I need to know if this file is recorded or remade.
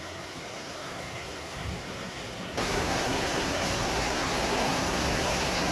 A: remade